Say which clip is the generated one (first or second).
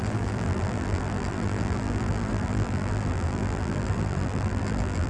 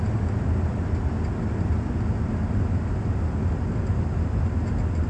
first